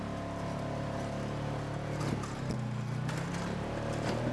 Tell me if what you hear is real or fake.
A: real